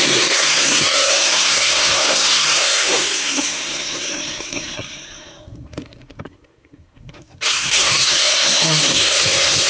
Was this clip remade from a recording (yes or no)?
yes